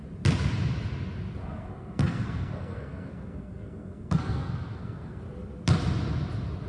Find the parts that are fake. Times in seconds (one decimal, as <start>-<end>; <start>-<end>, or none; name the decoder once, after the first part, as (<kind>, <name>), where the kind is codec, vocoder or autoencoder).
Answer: 1.4-5.2 (codec, SNAC)